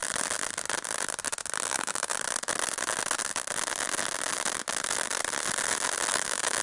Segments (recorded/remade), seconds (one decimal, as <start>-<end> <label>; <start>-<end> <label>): 0.0-1.7 recorded; 1.7-2.1 remade; 2.1-6.1 recorded; 6.1-6.6 remade